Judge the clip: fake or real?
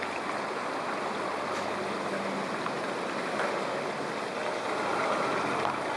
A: real